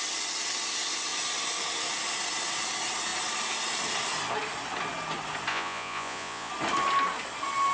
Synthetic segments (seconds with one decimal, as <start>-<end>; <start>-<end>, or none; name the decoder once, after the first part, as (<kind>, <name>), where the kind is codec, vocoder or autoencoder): 5.5-6.5 (vocoder, Vocos)